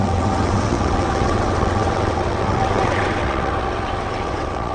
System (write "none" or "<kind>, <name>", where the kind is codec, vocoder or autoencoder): vocoder, WaveNeXt